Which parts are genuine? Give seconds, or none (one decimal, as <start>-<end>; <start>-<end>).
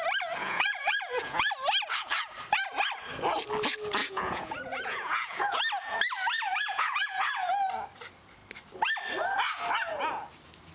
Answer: 0.0-0.4; 1.5-4.0; 5.6-6.5; 7.5-10.7